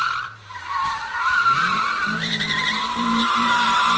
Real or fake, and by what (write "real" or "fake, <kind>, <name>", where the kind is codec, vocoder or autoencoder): fake, vocoder, BigVGAN v2